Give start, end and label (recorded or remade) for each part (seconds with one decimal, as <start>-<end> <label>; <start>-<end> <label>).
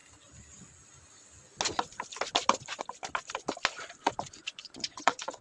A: 0.0-4.0 recorded; 4.0-5.4 remade